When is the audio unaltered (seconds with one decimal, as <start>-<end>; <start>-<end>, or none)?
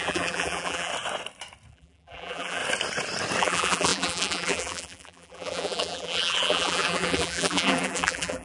0.9-1.7; 2.6-3.4